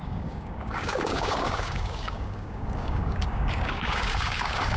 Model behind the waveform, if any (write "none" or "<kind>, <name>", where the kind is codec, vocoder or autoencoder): codec, DAC